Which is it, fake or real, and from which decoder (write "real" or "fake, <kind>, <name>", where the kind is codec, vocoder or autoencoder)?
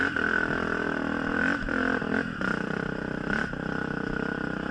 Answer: fake, vocoder, BigVGAN v2